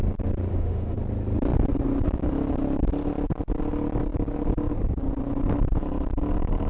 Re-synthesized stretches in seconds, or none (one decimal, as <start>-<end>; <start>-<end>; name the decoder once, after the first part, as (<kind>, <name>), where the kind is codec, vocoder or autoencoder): 0.5-1.0 (autoencoder, DAC-VAE)